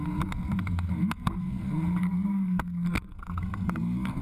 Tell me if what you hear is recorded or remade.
remade